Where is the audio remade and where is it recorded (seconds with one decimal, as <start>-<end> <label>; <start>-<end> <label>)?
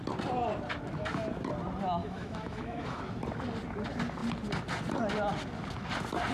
0.0-2.0 recorded; 2.0-3.0 remade; 3.0-6.3 recorded